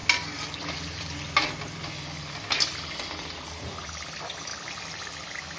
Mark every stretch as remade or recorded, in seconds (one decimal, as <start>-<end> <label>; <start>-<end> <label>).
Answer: 0.0-5.6 recorded